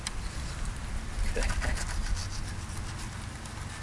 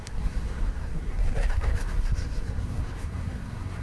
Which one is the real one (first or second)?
first